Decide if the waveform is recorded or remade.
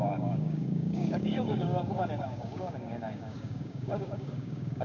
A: remade